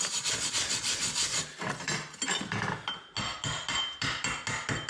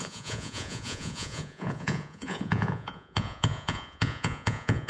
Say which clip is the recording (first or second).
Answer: first